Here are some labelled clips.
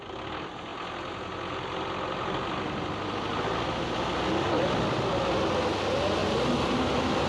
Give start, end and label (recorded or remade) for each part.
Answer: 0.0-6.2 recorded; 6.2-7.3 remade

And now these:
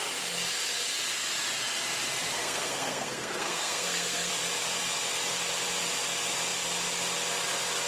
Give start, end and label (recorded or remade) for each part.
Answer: 0.0-2.4 recorded; 2.4-4.3 remade; 4.3-7.9 recorded

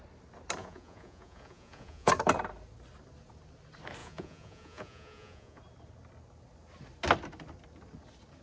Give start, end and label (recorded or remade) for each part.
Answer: 0.0-0.6 recorded; 0.6-2.1 remade; 2.1-4.0 recorded; 4.0-5.6 remade; 5.6-8.4 recorded

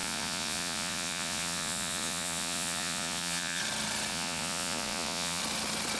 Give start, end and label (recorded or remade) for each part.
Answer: 0.0-3.6 remade; 3.6-4.1 recorded; 4.1-5.4 remade; 5.4-6.0 recorded

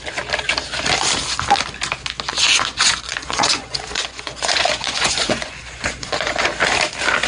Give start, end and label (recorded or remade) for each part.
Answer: 0.0-2.3 recorded; 2.3-6.5 remade; 6.5-7.3 recorded

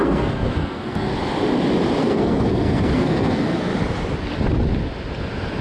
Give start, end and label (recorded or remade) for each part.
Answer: 0.0-1.1 remade; 1.1-2.0 recorded; 2.0-3.7 remade; 3.7-5.6 recorded